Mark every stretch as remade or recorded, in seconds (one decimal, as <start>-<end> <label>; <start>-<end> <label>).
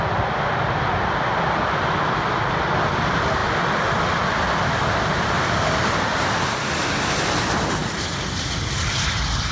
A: 0.0-9.5 recorded